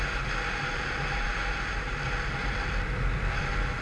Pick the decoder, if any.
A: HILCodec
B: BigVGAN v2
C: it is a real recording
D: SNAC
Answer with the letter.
C